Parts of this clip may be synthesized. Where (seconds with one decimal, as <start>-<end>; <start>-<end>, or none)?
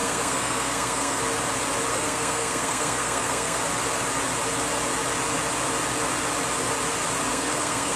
0.0-1.2; 1.9-3.6; 7.3-8.0